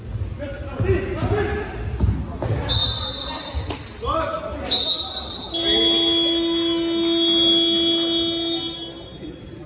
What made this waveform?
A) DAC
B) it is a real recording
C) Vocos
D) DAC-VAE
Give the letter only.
B